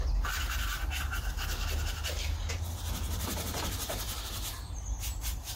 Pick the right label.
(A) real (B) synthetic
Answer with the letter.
A